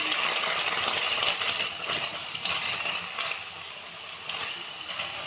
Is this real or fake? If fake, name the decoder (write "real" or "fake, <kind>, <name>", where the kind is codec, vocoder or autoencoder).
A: real